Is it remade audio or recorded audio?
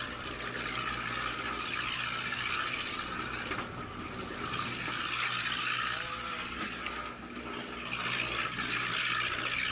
recorded